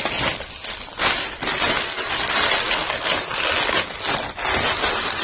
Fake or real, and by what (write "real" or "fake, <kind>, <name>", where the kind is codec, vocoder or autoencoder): real